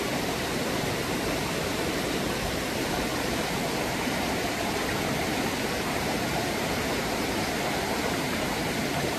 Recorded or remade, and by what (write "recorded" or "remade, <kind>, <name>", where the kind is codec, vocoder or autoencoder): remade, vocoder, BigVGAN v2